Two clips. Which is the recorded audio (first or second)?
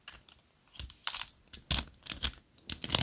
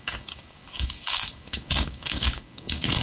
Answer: first